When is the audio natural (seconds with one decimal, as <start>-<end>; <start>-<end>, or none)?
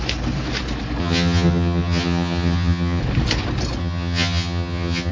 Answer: 0.0-1.0; 3.0-3.8